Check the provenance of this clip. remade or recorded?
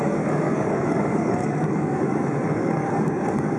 remade